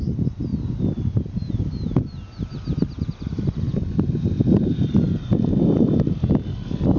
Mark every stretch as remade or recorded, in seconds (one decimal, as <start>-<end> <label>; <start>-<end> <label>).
0.0-0.5 recorded; 0.5-1.5 remade; 1.5-3.7 recorded; 3.7-4.7 remade; 4.7-7.0 recorded